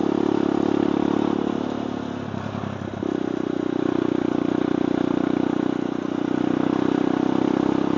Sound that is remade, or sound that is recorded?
recorded